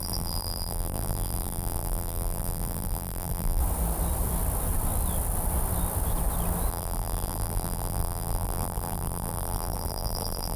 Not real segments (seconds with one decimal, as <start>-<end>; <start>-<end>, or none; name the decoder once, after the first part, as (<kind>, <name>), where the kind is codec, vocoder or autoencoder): 0.0-3.6 (vocoder, BigVGAN v2); 6.7-10.6